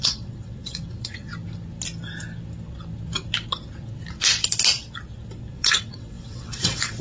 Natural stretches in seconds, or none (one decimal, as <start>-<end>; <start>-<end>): 1.3-5.5